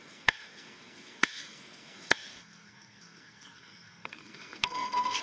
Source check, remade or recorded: remade